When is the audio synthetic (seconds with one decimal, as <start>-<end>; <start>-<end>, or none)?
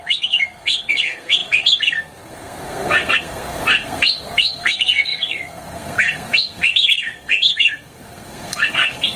0.0-9.2